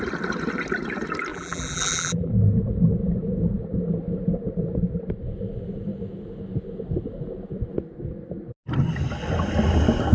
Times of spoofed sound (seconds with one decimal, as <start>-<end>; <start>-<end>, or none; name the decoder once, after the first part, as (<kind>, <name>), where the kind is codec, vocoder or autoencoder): 1.3-2.3 (vocoder, BigVGAN v2)